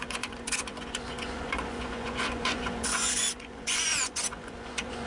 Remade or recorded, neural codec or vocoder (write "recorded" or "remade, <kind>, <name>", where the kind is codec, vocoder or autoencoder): remade, vocoder, Vocos